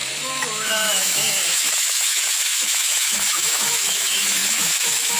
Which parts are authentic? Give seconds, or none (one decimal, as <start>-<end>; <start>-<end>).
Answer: none